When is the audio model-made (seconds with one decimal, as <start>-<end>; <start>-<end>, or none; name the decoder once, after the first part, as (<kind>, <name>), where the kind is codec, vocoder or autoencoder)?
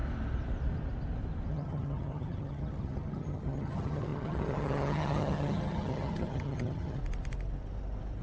1.5-7.0 (vocoder, HiFi-GAN)